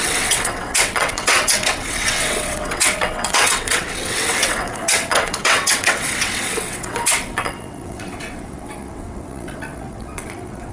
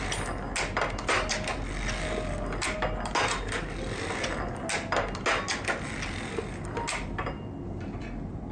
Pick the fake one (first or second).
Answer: first